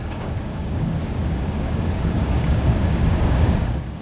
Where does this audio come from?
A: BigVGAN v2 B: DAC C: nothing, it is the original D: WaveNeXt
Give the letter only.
B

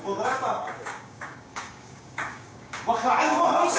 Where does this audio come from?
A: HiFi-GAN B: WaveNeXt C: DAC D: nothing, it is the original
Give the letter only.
C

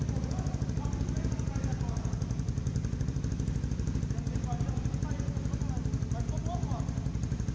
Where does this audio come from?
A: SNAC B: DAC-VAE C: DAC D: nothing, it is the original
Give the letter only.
D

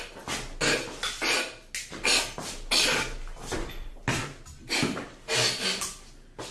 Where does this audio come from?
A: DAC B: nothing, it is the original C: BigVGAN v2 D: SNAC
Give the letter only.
B